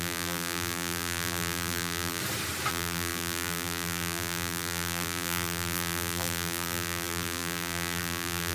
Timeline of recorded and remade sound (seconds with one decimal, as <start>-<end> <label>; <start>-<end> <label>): 0.0-2.2 remade; 2.2-2.7 recorded; 2.7-8.5 remade